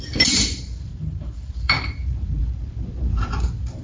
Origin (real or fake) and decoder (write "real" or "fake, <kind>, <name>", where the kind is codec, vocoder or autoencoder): fake, vocoder, BigVGAN v2